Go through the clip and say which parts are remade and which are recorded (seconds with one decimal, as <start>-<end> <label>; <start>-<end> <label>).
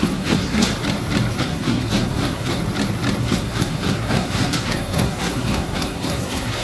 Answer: 0.0-0.7 remade; 0.7-1.4 recorded; 1.4-2.6 remade; 2.6-3.2 recorded; 3.2-6.6 remade